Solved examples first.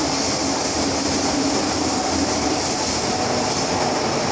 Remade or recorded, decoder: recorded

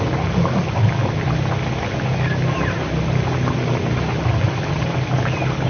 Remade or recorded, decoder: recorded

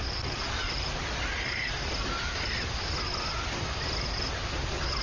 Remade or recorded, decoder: recorded